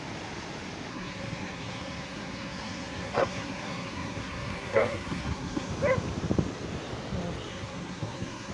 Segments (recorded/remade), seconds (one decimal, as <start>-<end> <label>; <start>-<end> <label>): 0.0-0.9 recorded; 0.9-5.7 remade; 5.7-7.5 recorded; 7.5-8.5 remade